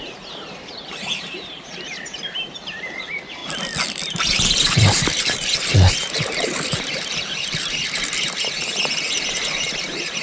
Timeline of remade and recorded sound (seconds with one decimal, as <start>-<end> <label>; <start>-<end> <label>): 0.0-3.4 remade; 3.4-4.1 recorded; 4.1-10.2 remade